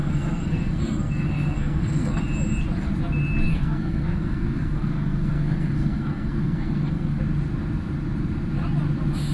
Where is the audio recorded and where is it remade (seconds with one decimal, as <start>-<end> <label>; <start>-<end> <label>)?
0.0-2.2 remade; 2.2-3.5 recorded; 3.5-7.2 remade; 7.2-9.3 recorded